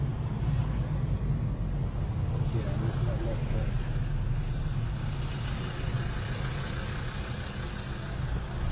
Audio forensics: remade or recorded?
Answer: recorded